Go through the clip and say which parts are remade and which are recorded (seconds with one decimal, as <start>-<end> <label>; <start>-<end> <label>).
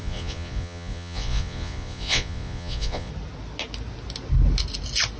0.0-3.1 remade; 3.1-5.2 recorded